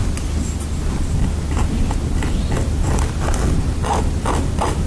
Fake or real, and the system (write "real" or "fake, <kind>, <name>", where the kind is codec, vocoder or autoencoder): real